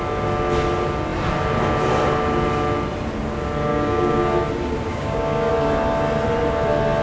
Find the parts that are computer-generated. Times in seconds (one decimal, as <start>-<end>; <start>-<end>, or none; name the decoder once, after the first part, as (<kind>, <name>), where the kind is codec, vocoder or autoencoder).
3.7-4.2 (codec, DAC); 4.9-5.5

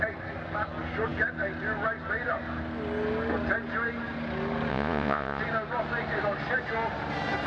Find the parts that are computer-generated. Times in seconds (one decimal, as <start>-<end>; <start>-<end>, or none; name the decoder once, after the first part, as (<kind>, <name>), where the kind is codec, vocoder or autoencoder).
4.7-5.4 (vocoder, Vocos)

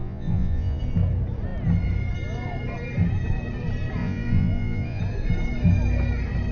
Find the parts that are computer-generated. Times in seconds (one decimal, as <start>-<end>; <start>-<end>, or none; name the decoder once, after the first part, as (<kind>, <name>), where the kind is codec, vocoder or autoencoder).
0.0-0.8 (vocoder, Vocos); 4.0-5.0

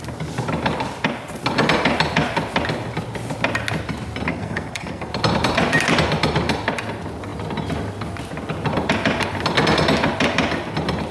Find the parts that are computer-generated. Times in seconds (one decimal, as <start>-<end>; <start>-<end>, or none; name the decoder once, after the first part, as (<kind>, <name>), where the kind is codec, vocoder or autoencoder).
4.3-5.1 (codec, SNAC)

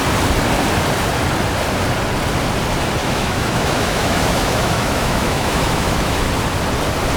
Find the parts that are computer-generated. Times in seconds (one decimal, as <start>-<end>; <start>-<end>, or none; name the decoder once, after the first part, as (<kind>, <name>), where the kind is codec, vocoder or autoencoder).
3.0-6.3 (autoencoder, DAC-VAE)